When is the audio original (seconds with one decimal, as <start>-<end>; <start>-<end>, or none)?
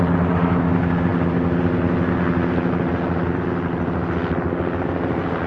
0.0-5.5